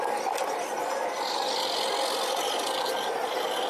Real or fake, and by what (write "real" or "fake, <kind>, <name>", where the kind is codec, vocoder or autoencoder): real